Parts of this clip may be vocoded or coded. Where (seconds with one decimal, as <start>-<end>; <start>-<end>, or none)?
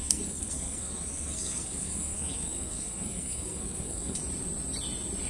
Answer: 0.0-4.2